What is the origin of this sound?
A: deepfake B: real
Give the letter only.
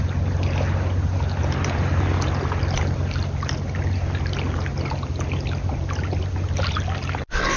B